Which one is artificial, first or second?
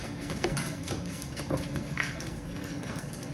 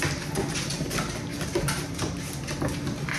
first